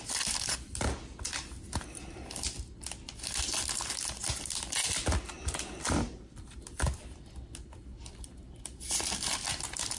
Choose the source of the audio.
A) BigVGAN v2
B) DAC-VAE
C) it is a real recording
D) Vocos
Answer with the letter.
C